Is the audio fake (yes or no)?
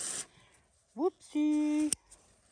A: no